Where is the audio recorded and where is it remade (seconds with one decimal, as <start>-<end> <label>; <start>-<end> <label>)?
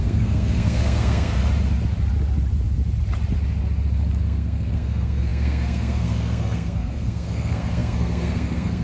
0.0-1.4 remade; 1.4-4.2 recorded; 4.2-8.8 remade